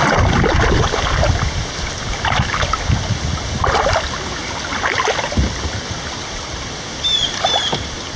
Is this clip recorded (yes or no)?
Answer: yes